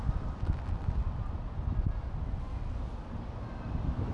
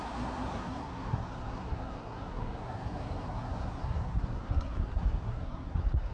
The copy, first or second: second